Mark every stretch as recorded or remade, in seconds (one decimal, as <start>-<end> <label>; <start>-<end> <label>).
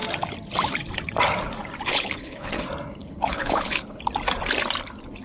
0.0-1.9 recorded; 1.9-2.6 remade; 2.6-3.0 recorded; 3.0-4.0 remade; 4.0-5.2 recorded